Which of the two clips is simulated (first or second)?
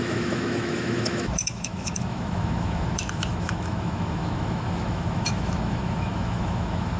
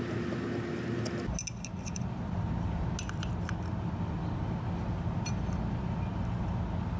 first